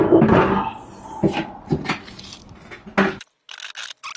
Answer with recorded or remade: recorded